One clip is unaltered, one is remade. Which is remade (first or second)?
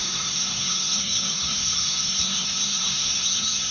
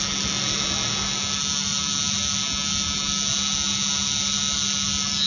first